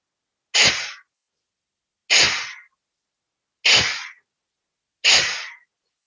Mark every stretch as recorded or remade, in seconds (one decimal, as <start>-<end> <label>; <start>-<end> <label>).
0.0-6.1 recorded